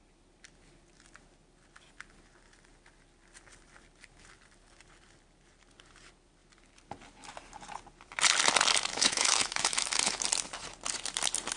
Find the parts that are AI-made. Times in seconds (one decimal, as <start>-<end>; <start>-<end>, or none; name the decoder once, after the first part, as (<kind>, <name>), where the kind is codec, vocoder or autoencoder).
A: 8.9-10.2 (autoencoder, DAC-VAE)